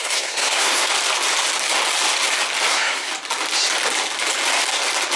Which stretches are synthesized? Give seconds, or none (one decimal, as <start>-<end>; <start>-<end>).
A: 0.0-0.9; 2.7-3.1